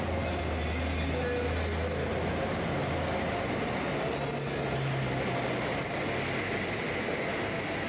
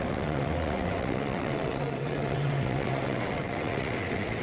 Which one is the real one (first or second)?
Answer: first